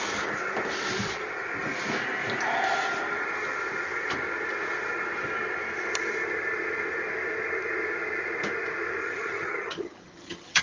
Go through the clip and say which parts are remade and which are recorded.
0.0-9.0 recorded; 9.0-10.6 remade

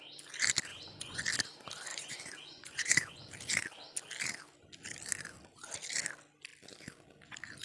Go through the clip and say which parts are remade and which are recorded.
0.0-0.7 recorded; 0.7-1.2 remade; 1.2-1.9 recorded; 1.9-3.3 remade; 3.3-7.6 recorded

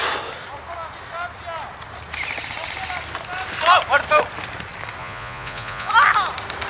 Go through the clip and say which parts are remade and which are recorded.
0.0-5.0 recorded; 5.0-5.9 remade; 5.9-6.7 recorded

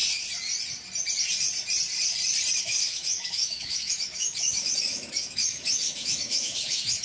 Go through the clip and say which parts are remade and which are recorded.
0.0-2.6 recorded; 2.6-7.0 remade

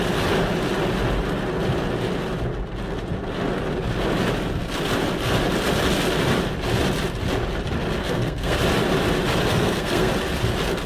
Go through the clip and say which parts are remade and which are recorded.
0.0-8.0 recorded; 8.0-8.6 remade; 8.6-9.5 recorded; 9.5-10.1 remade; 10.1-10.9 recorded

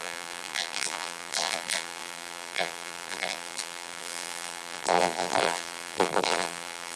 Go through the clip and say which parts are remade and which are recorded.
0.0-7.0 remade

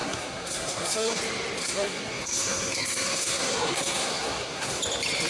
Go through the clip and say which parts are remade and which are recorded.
0.0-1.2 remade; 1.2-1.6 recorded; 1.6-4.8 remade; 4.8-5.3 recorded

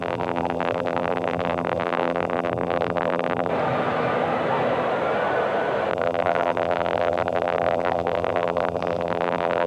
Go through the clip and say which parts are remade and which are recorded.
0.0-3.5 remade; 3.5-5.9 recorded; 5.9-9.7 remade